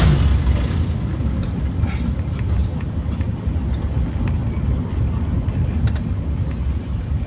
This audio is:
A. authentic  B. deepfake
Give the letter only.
A